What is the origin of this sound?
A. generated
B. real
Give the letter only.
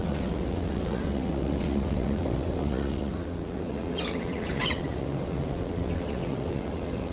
A